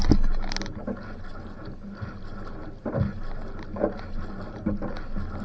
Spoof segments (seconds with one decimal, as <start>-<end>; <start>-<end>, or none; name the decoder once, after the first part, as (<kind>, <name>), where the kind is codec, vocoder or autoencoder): none